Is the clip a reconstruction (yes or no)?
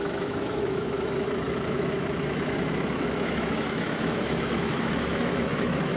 yes